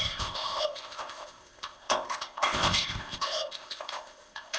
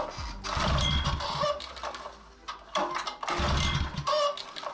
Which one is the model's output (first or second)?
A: first